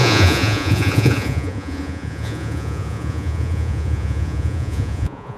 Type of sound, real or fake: fake